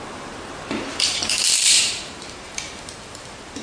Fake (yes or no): yes